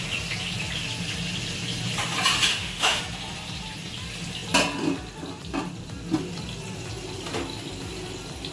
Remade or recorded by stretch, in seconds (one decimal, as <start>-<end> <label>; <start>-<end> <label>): 0.0-2.5 recorded; 2.5-3.0 remade; 3.0-8.5 recorded